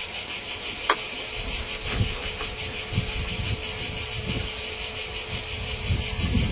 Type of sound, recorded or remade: recorded